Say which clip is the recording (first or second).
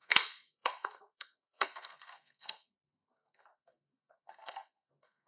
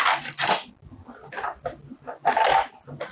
second